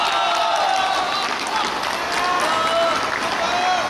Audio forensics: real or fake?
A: real